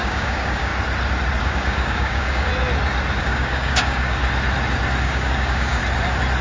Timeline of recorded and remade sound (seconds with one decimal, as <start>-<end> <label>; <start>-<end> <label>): 0.0-0.7 remade; 0.7-1.4 recorded; 1.4-2.5 remade; 2.5-3.2 recorded; 3.2-4.2 remade; 4.2-5.0 recorded; 5.0-5.8 remade; 5.8-6.4 recorded